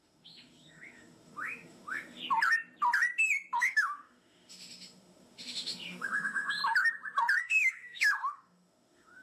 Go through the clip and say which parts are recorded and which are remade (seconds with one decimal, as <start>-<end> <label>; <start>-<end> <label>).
0.0-2.2 remade; 2.2-3.6 recorded; 3.6-6.6 remade; 6.6-7.4 recorded; 7.4-9.2 remade